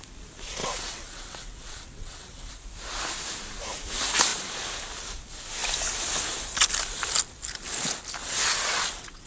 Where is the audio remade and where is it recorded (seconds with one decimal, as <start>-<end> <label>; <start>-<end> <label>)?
0.0-0.6 recorded; 0.6-2.5 remade; 2.5-8.2 recorded; 8.2-9.3 remade

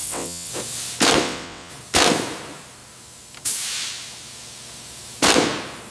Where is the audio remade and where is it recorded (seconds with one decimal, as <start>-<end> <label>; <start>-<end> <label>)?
0.0-0.5 remade; 0.5-1.2 recorded; 1.2-1.7 remade; 1.7-5.9 recorded

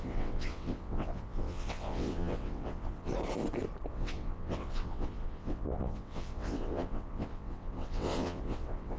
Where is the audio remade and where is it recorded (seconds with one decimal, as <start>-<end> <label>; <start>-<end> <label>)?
0.0-3.1 remade; 3.1-3.9 recorded; 3.9-9.0 remade

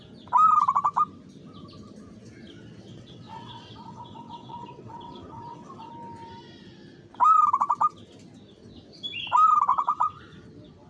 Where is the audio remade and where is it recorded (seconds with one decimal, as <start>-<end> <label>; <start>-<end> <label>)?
0.0-2.9 recorded; 2.9-5.9 remade; 5.9-9.7 recorded; 9.7-10.2 remade; 10.2-10.9 recorded

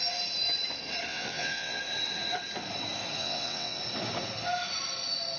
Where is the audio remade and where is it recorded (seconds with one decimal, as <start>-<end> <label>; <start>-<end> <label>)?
0.0-1.1 recorded; 1.1-1.8 remade; 1.8-3.2 recorded; 3.2-3.8 remade; 3.8-5.4 recorded

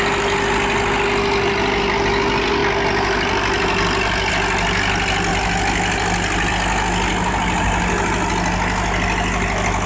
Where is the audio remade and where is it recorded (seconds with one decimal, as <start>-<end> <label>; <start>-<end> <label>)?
0.0-9.9 recorded